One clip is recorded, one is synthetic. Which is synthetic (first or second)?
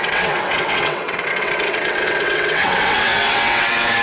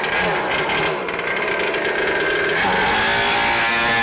first